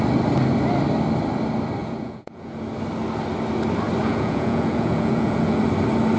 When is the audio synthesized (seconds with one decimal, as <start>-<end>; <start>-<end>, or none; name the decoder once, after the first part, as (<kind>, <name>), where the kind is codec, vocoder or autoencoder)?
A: 1.8-2.6 (vocoder, Vocos); 4.0-5.6